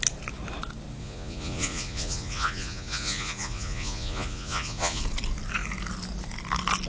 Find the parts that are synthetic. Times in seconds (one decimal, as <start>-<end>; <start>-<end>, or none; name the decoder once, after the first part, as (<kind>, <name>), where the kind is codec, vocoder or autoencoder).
1.0-5.0 (vocoder, Vocos)